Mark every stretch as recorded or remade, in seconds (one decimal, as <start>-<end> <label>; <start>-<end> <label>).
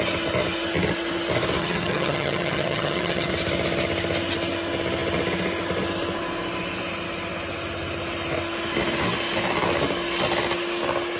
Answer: 0.0-1.6 recorded; 1.6-3.3 remade; 3.3-11.2 recorded